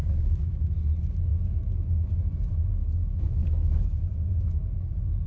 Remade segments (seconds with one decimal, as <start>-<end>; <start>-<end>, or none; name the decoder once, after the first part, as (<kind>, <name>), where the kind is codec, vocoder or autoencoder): 0.0-0.7 (autoencoder, DAC-VAE); 1.3-2.2; 2.8-4.7

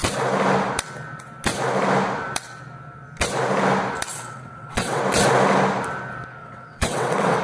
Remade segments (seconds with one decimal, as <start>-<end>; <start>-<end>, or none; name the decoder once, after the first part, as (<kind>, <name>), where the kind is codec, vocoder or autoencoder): 4.1-5.0 (vocoder, WaveNeXt); 6.4-7.4

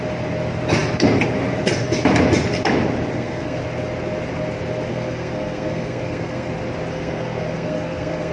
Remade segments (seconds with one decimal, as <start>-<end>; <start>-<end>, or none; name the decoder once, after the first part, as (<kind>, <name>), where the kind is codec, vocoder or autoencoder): 3.1-3.6 (codec, SNAC); 4.9-6.5; 6.9-8.3

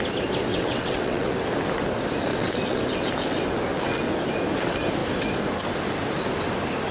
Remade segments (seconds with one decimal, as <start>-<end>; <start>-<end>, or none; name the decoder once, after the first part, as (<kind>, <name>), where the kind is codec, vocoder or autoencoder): 0.5-1.3 (vocoder, WaveNeXt); 2.3-2.8

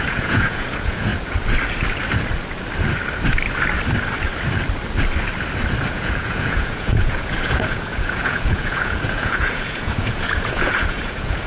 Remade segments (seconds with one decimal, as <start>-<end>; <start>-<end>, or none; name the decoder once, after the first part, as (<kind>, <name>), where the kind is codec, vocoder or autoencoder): 0.0-1.1 (vocoder, Vocos); 5.9-11.5